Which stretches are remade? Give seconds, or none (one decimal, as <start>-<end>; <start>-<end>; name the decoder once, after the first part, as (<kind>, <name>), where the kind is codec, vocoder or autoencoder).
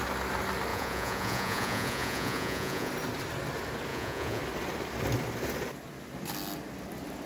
0.7-2.9 (vocoder, Vocos); 3.9-4.4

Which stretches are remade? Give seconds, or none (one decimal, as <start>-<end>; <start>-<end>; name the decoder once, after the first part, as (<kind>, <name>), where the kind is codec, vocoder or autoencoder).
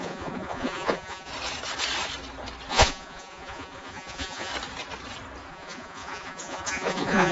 0.0-1.3 (vocoder, Vocos); 2.7-4.5; 5.5-7.3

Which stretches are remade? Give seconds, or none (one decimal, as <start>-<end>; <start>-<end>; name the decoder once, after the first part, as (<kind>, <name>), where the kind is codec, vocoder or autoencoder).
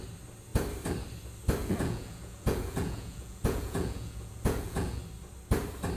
1.6-5.0 (vocoder, Vocos)